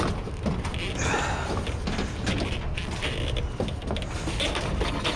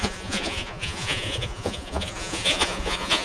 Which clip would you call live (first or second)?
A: first